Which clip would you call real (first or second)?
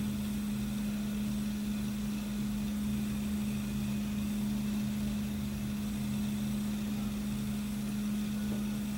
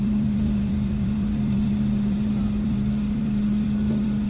first